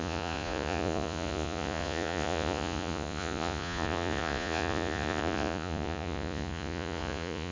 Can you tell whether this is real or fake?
fake